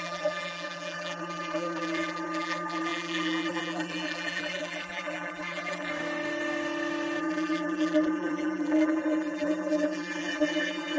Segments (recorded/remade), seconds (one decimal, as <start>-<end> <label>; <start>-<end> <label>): 0.0-5.9 remade; 5.9-7.2 recorded; 7.2-11.0 remade